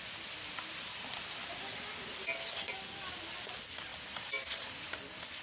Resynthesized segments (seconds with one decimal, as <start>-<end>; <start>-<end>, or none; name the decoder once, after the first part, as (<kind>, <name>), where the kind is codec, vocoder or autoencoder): 3.9-5.0 (vocoder, BigVGAN v2)